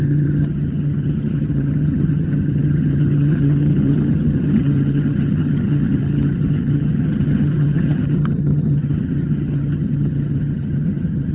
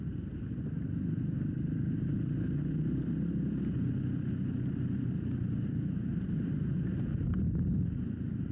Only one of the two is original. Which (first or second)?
second